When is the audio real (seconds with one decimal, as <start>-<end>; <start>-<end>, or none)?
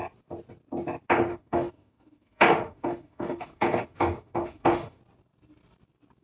0.0-1.3; 5.0-6.2